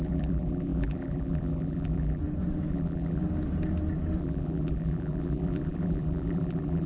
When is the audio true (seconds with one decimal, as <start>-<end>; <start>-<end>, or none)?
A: 2.2-2.7; 3.2-4.2